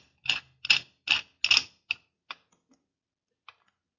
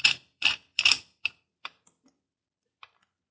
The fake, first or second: second